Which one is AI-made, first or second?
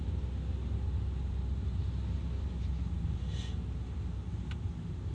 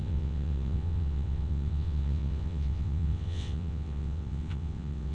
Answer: second